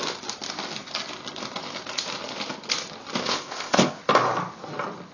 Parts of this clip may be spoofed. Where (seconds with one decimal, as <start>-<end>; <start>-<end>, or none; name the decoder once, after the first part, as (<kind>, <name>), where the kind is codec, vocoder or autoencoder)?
3.2-4.0 (codec, ZipCodec)